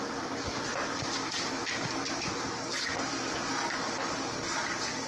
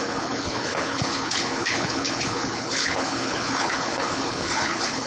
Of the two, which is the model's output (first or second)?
second